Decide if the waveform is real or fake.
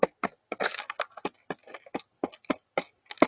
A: real